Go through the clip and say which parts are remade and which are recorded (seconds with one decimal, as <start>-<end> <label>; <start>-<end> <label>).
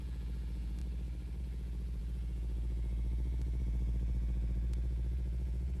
0.0-0.8 remade; 0.8-1.4 recorded; 1.4-5.8 remade